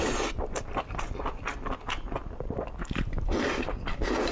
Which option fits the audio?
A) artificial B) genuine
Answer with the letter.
B